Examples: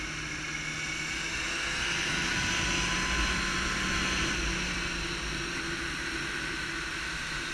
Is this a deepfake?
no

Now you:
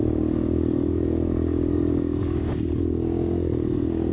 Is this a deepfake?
yes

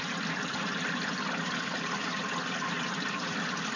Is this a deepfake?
no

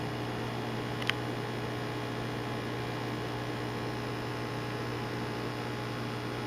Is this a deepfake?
no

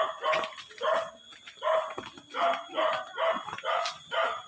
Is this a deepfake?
no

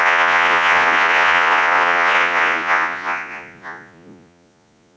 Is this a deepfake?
yes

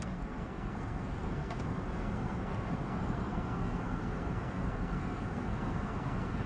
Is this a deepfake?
yes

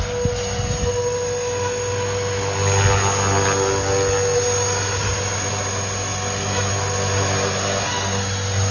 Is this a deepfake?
no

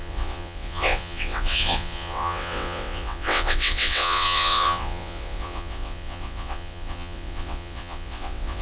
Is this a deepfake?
yes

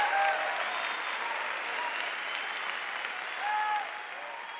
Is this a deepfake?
no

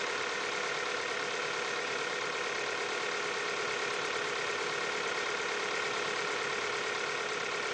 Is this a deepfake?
no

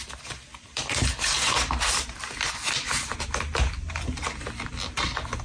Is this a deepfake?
no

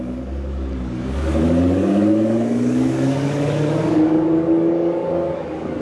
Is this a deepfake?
yes